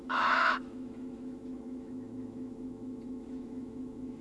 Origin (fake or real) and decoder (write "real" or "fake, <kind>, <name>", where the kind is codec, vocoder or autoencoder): fake, autoencoder, DAC-VAE